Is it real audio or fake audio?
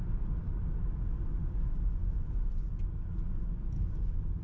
real